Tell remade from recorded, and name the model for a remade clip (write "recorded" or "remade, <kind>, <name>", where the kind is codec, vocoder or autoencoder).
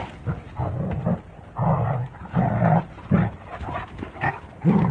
recorded